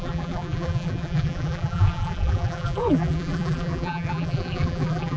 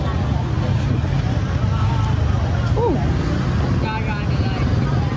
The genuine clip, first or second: second